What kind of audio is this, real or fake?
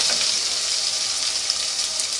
real